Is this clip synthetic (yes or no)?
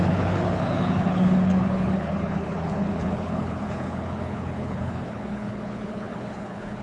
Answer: yes